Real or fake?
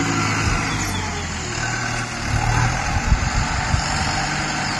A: real